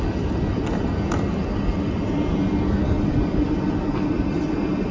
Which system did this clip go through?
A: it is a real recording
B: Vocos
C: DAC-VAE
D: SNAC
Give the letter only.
A